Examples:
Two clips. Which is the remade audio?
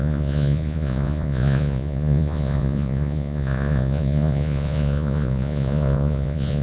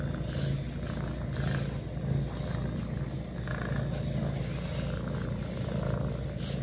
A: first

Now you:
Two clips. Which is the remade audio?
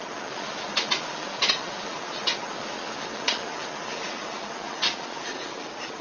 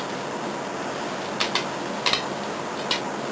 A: first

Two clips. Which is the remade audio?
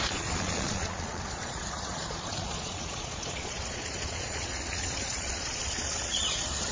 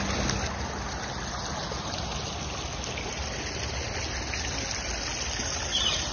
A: first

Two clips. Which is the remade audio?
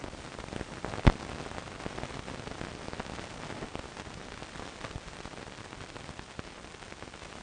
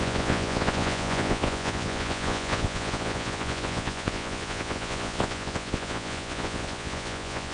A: second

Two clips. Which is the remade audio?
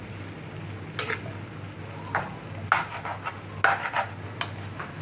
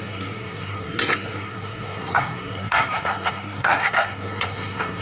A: second